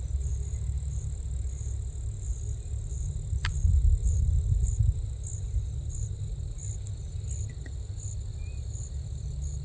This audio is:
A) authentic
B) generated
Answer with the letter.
A